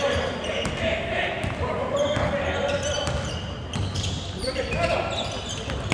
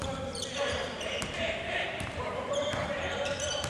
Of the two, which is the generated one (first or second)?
second